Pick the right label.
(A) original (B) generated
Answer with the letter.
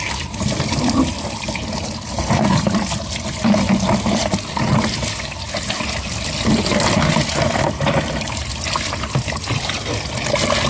A